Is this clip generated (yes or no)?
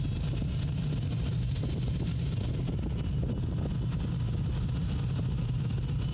no